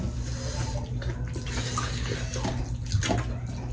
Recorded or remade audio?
recorded